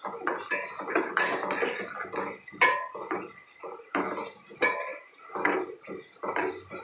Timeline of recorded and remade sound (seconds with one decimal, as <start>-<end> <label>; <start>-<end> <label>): 0.0-6.8 recorded